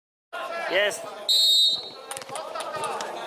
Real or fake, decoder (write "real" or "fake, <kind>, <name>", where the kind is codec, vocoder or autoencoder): real